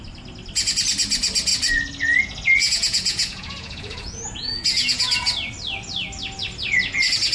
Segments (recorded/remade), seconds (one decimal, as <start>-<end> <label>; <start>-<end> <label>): 0.0-2.6 recorded; 2.6-5.1 remade; 5.1-7.3 recorded